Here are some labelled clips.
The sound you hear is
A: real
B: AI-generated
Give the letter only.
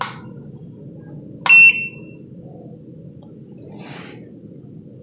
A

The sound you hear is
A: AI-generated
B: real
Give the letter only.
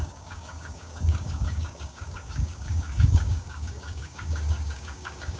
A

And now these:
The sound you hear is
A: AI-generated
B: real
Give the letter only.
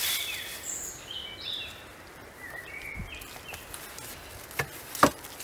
B